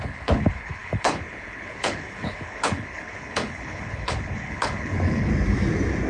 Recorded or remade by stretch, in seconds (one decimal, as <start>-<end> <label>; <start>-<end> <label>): 0.0-5.3 remade; 5.3-6.1 recorded